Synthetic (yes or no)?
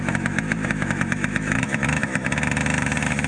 yes